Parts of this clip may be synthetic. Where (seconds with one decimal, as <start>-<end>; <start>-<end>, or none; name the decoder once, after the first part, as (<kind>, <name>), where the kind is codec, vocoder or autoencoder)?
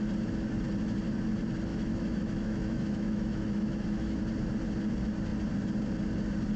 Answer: 1.7-4.2 (autoencoder, DAC-VAE)